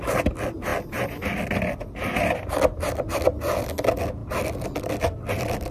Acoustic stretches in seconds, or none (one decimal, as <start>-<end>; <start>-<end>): 0.0-5.7